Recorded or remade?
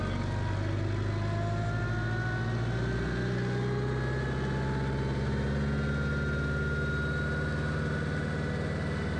recorded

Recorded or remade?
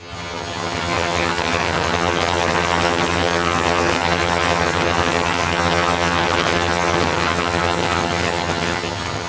remade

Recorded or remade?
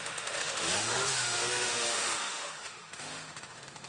remade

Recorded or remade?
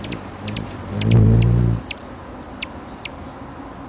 recorded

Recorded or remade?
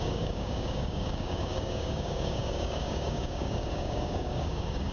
remade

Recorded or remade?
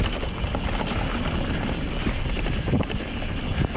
recorded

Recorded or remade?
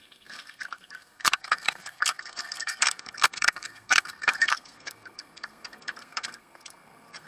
remade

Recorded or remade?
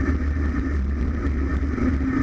recorded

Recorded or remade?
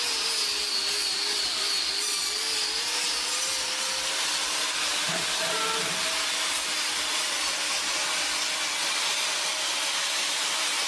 recorded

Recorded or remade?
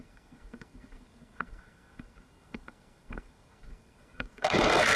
remade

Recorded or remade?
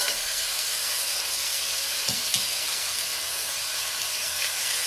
remade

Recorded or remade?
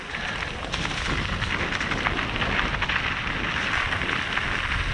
recorded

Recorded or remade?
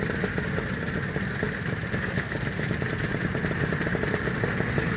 recorded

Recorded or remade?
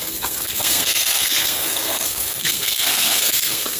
remade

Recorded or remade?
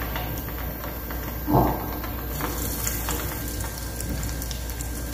recorded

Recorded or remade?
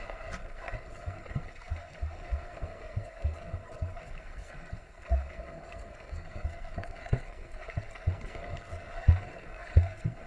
remade